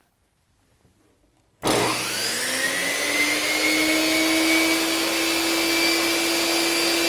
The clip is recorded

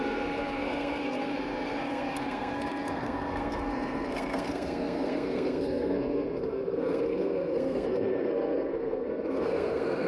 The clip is remade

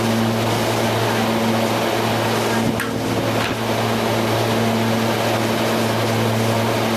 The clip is recorded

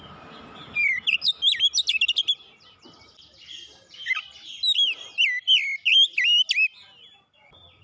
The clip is recorded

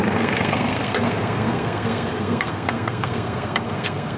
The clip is remade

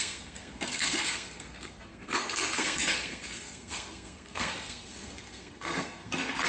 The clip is remade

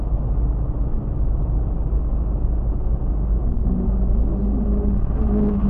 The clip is recorded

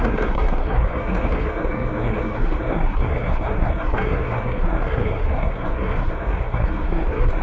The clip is remade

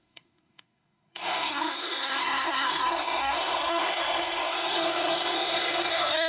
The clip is remade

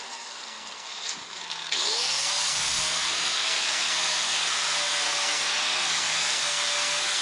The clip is remade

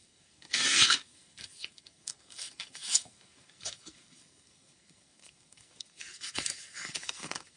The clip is remade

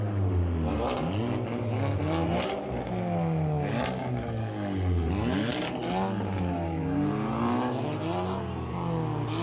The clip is recorded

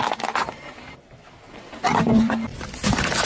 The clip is recorded